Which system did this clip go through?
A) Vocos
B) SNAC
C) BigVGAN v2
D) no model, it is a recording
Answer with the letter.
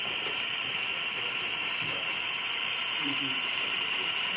C